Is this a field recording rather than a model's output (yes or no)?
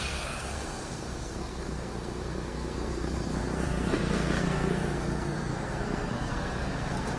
no